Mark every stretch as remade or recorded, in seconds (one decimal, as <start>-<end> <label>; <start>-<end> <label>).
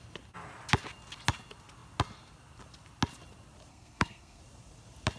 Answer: 0.0-3.7 recorded; 3.7-4.4 remade; 4.4-5.2 recorded